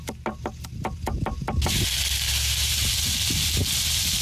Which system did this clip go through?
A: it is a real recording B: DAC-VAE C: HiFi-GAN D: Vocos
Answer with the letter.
A